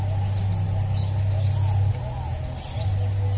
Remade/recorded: recorded